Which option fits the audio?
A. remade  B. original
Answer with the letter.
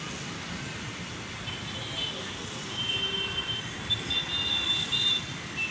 B